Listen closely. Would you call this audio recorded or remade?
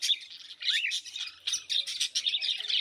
recorded